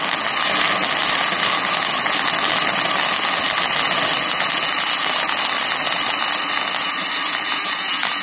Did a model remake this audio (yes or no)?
no